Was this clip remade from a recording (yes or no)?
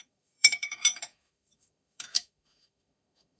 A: yes